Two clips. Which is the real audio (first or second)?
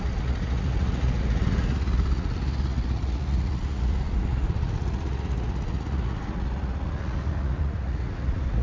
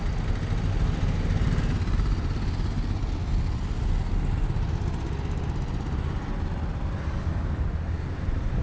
second